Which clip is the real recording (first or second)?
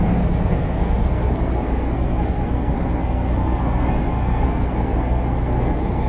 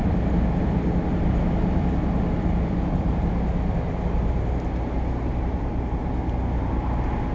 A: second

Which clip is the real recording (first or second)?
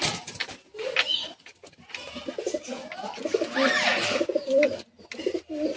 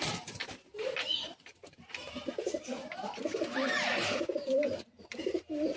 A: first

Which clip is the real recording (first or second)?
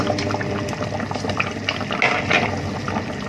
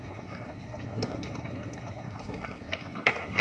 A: first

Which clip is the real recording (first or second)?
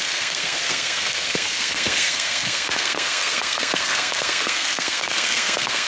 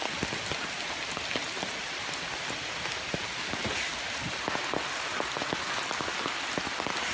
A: second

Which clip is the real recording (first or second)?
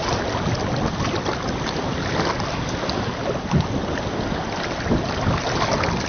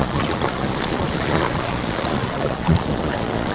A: first